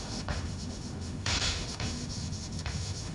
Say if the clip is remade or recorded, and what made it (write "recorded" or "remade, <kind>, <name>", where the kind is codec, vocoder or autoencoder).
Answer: remade, autoencoder, DAC-VAE